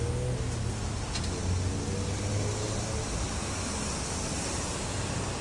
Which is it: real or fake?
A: real